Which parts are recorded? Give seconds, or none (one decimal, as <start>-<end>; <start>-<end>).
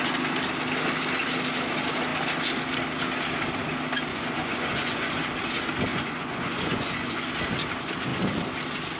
0.0-4.1; 5.2-5.9; 7.3-9.0